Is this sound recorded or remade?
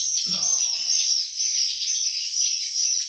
remade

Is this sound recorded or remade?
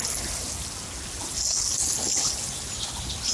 recorded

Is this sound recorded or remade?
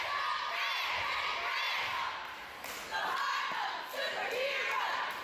recorded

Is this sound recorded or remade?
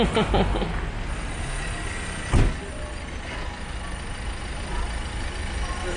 recorded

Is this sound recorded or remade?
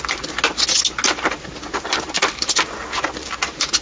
recorded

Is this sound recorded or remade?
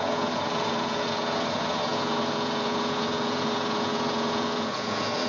remade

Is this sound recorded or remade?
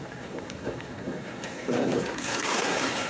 remade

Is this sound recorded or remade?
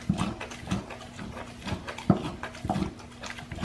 recorded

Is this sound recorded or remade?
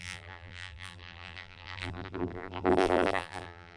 remade